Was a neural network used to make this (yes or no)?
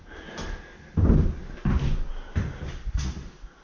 no